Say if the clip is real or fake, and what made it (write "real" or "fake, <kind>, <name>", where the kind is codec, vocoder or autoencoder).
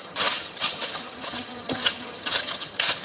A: fake, vocoder, HiFi-GAN